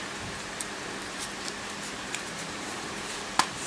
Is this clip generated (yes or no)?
yes